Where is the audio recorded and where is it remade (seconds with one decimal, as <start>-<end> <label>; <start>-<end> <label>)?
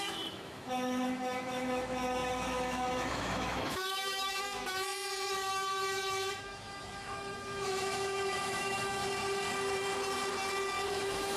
0.0-9.0 remade; 9.0-10.9 recorded; 10.9-11.4 remade